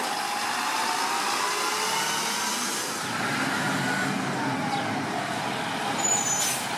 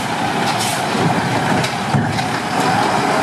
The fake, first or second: second